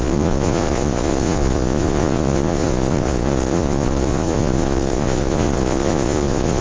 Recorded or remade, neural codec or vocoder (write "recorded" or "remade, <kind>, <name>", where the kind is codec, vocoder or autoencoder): remade, vocoder, Vocos